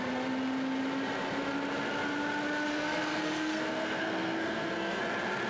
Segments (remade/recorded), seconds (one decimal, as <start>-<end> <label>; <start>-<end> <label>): 0.0-2.7 recorded; 2.7-5.0 remade; 5.0-5.5 recorded